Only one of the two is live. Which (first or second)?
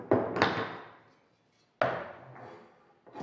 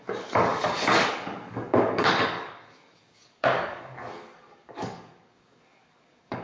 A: first